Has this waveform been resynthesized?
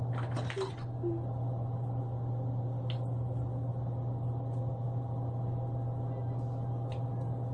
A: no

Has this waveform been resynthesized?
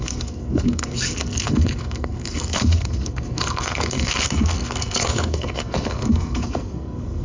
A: yes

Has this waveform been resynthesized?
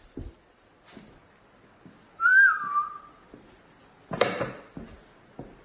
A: no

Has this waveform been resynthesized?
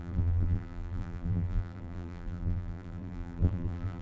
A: yes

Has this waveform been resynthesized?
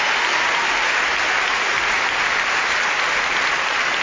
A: no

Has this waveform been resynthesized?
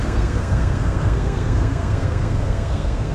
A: yes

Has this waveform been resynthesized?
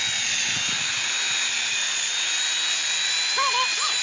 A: no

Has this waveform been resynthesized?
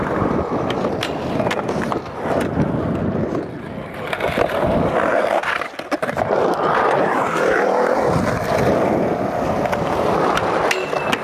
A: no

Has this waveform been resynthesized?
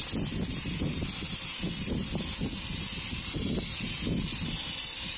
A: no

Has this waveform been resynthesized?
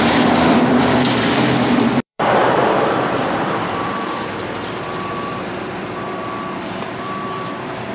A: yes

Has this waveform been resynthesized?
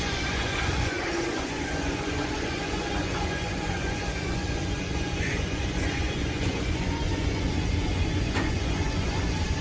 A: yes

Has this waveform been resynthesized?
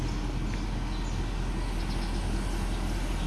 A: no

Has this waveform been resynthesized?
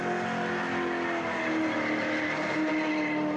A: no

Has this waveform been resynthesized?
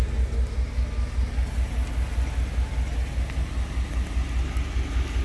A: no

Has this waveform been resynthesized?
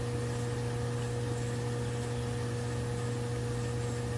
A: no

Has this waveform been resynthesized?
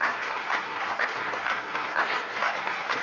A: yes